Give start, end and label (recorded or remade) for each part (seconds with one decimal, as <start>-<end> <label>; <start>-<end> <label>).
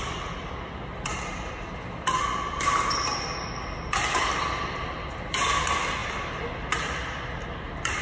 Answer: 0.0-8.0 recorded